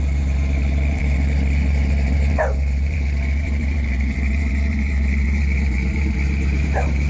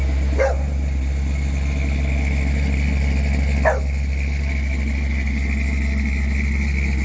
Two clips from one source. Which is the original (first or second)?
second